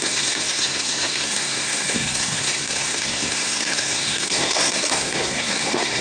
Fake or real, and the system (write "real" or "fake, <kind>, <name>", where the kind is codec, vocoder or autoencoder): fake, codec, SNAC